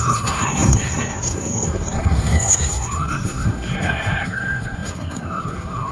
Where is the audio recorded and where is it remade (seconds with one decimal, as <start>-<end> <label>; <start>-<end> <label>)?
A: 0.0-5.9 remade